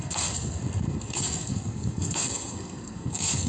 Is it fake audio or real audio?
fake